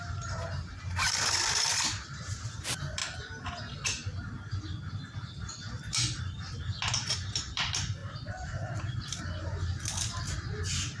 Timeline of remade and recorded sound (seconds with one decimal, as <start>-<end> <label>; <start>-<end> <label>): 0.0-3.0 remade; 3.0-6.2 recorded; 6.2-11.0 remade